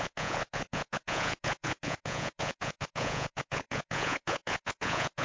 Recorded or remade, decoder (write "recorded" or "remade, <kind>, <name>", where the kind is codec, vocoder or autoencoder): remade, vocoder, Vocos